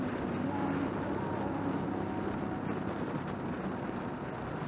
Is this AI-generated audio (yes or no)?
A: no